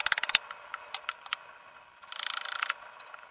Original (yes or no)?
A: yes